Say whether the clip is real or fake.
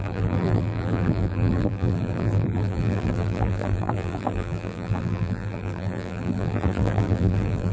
fake